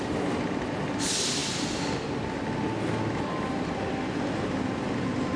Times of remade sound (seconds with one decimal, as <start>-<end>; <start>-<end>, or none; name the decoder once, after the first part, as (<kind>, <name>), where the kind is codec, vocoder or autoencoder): none